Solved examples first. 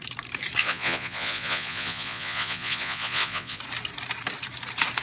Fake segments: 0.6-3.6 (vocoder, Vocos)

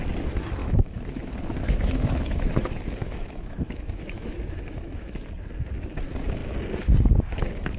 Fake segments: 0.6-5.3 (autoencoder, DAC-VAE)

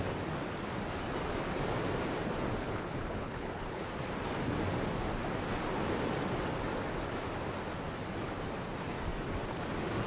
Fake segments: 2.6-3.9 (codec, HILCodec)

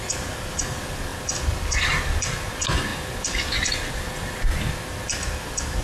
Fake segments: none

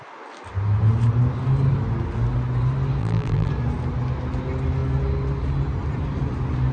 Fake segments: 3.0-3.5 (vocoder, BigVGAN v2)

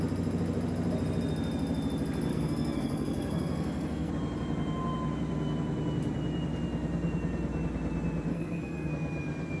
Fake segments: 2.3-4.1 (codec, SNAC); 8.3-8.9